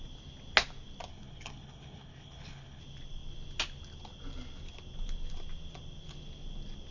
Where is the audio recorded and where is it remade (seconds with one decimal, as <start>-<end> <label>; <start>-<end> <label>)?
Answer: 0.0-1.1 recorded; 1.1-2.8 remade; 2.8-6.9 recorded